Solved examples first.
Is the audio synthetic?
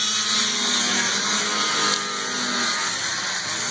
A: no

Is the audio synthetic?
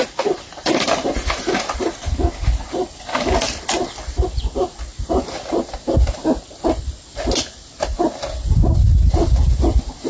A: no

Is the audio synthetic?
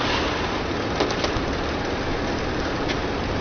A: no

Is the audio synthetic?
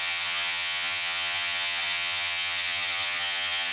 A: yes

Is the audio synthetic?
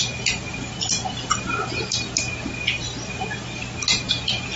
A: no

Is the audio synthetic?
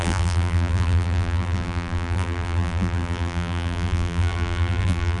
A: yes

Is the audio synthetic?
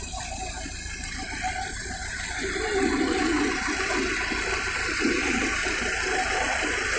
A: yes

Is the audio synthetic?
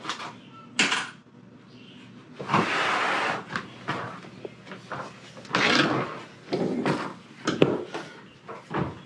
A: no